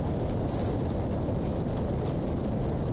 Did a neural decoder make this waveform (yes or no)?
no